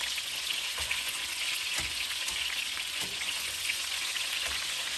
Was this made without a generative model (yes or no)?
no